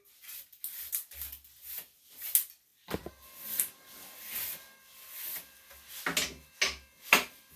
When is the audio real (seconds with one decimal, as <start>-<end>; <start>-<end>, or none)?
0.0-7.6